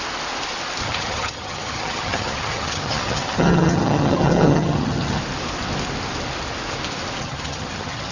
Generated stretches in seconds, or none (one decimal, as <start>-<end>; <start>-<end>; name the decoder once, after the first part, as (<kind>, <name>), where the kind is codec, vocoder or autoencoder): 0.8-5.2 (vocoder, HiFi-GAN); 7.2-8.1